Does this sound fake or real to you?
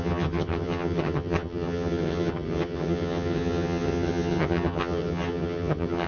fake